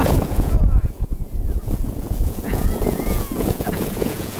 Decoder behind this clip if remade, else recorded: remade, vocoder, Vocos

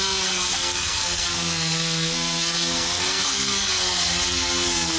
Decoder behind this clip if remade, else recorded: remade, codec, SNAC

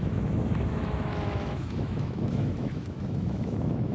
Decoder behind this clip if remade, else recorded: remade, autoencoder, DAC-VAE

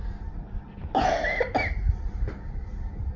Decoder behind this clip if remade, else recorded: recorded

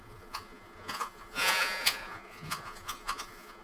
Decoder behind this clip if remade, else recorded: remade, vocoder, Vocos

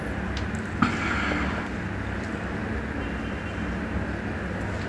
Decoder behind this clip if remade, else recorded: recorded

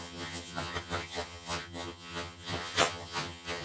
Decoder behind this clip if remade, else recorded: remade, vocoder, HiFi-GAN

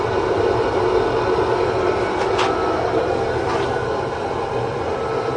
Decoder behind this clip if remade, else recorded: recorded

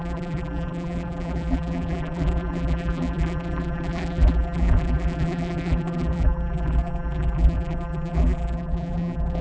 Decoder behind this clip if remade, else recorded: remade, vocoder, BigVGAN v2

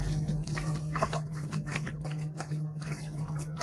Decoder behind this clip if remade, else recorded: remade, codec, SNAC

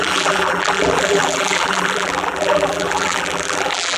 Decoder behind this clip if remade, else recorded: remade, vocoder, BigVGAN v2